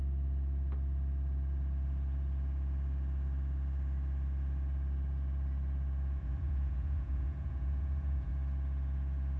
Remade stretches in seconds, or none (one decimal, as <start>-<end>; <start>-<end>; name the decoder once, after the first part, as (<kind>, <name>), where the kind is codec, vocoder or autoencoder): 6.2-8.3 (vocoder, Vocos)